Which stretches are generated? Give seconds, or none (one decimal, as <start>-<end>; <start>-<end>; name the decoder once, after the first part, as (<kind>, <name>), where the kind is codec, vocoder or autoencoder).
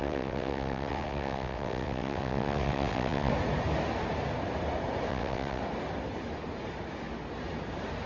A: 0.0-3.3 (vocoder, WaveNeXt); 5.1-5.6